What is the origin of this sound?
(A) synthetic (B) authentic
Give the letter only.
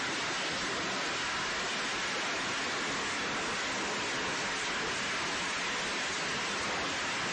B